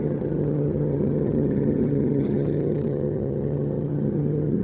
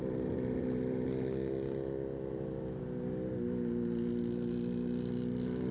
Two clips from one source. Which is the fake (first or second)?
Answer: first